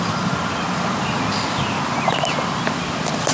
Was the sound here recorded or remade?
recorded